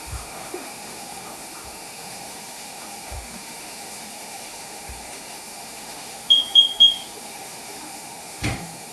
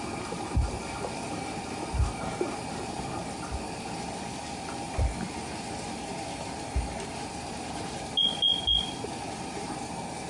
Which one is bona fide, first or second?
second